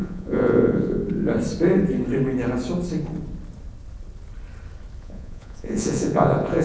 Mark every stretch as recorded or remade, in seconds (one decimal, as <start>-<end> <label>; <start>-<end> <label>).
0.0-1.0 remade; 1.0-5.0 recorded; 5.0-6.6 remade